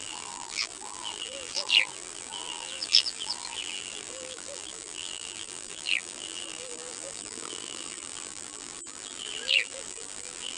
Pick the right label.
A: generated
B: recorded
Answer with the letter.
A